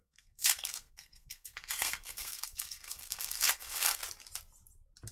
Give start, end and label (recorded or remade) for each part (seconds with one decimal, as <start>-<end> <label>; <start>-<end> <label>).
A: 0.0-4.0 remade; 4.0-5.1 recorded